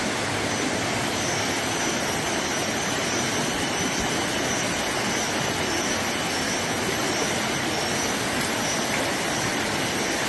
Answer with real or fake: real